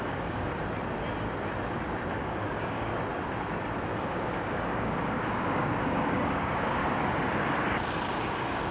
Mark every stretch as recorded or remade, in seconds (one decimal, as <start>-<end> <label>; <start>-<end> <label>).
0.0-0.5 remade; 0.5-2.1 recorded; 2.1-2.9 remade; 2.9-4.0 recorded; 4.0-6.8 remade; 6.8-8.1 recorded; 8.1-8.7 remade